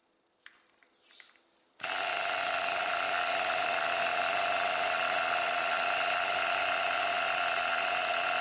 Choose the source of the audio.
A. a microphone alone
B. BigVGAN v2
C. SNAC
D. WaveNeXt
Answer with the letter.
A